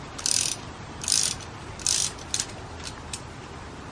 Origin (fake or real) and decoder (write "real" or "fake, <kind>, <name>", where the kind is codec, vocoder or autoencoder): real